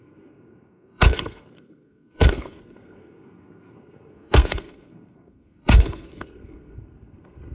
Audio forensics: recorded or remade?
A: remade